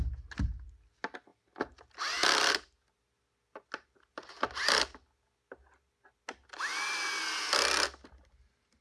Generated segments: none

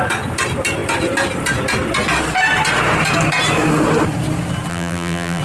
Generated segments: 4.7-5.4 (vocoder, BigVGAN v2)

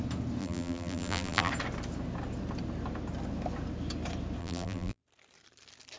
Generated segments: 0.4-1.5 (vocoder, BigVGAN v2); 4.4-5.0

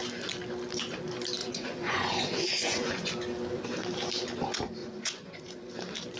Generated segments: 1.4-3.1 (vocoder, Vocos); 4.8-5.7

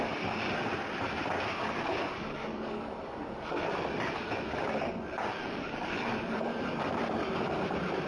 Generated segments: 2.1-3.7 (codec, DAC); 5.4-6.4

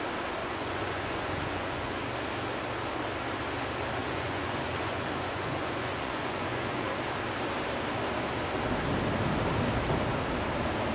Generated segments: 0.4-2.0 (vocoder, Vocos); 4.0-7.0

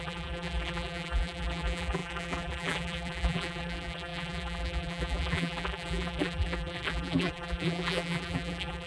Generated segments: 0.0-8.9 (vocoder, BigVGAN v2)

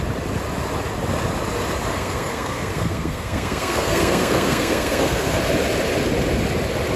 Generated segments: 1.9-5.4 (codec, SNAC)